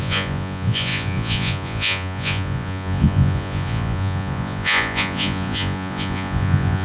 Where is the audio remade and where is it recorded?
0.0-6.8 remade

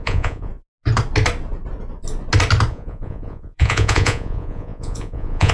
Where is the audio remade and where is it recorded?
0.0-0.5 remade; 0.5-2.7 recorded; 2.7-5.5 remade

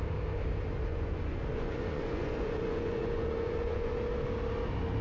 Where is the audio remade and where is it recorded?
0.0-0.9 recorded; 0.9-3.9 remade; 3.9-5.0 recorded